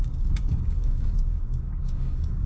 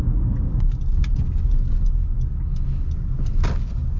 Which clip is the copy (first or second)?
first